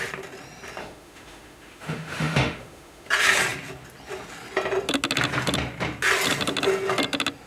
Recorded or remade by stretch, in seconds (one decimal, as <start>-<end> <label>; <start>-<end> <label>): 0.0-0.8 recorded; 0.8-3.1 remade; 3.1-7.5 recorded